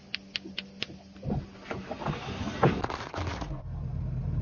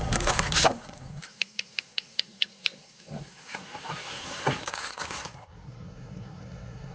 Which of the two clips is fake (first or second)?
second